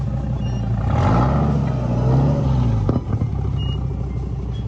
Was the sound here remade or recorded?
recorded